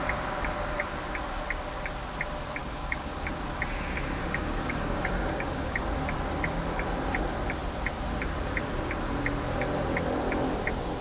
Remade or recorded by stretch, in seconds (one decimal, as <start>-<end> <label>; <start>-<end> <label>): 0.0-2.6 recorded; 2.6-3.2 remade; 3.2-4.2 recorded; 4.2-5.8 remade; 5.8-11.0 recorded